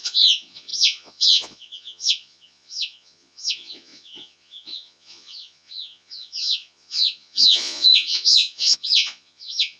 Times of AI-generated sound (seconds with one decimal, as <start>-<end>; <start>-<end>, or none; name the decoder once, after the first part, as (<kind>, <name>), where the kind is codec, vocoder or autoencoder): 0.0-9.8 (vocoder, Vocos)

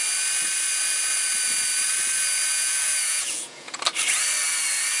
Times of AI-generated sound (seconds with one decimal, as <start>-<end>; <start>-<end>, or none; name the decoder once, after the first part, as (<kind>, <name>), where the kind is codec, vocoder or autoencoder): 2.5-3.8 (vocoder, Vocos)